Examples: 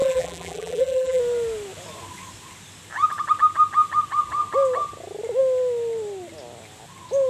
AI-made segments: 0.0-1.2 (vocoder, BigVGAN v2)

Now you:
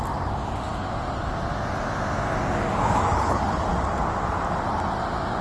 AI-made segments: 3.1-3.6 (codec, HILCodec)

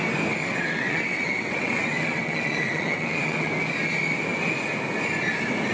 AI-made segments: 0.4-3.5 (vocoder, WaveNeXt)